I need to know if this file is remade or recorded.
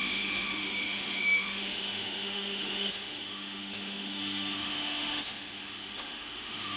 remade